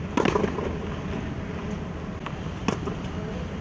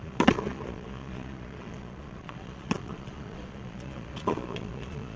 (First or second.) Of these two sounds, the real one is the first